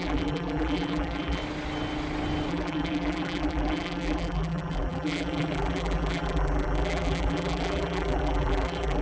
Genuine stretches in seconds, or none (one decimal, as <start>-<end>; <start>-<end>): 1.4-2.5